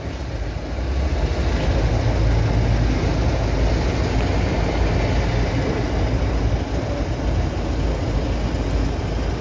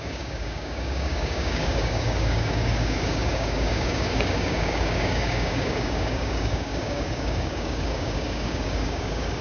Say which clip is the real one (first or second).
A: first